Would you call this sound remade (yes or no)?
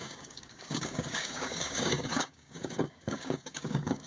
yes